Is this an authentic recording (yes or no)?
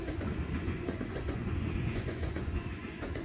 no